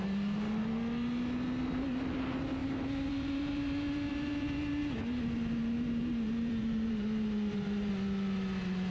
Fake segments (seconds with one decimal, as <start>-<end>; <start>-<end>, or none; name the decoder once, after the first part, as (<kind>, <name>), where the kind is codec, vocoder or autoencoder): 2.6-7.9 (vocoder, BigVGAN v2)